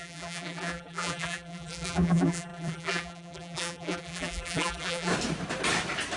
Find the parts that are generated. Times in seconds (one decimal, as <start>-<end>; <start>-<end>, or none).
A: 0.0-5.1